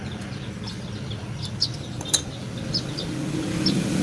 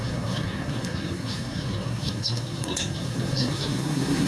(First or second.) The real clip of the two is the first